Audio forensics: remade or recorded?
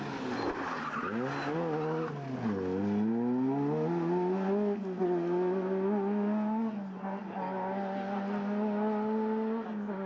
recorded